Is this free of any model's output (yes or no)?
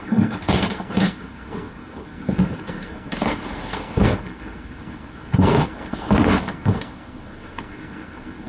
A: no